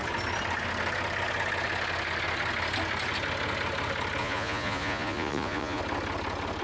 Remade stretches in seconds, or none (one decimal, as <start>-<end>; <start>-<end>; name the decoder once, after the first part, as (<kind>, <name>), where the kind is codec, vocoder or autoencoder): 4.2-5.8 (vocoder, Vocos)